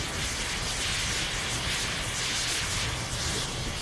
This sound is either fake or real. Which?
real